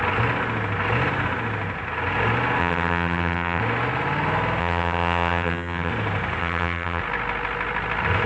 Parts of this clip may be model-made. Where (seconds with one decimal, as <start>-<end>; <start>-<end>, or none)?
2.6-3.6; 4.6-5.9; 6.4-7.0